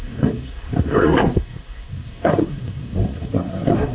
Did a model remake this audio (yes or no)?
yes